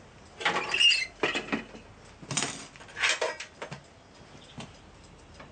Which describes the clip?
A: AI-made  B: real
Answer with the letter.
B